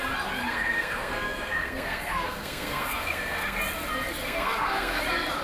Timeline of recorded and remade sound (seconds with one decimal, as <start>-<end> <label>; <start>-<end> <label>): 0.0-0.4 recorded; 0.4-3.6 remade; 3.6-4.2 recorded; 4.2-5.0 remade; 5.0-5.4 recorded